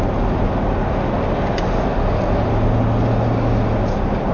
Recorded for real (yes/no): yes